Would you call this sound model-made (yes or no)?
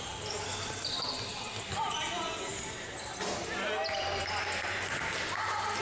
no